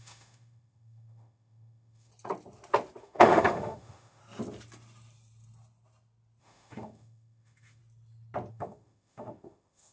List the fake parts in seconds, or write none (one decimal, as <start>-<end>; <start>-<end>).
0.0-2.1; 3.0-4.2; 6.4-7.8; 8.5-9.9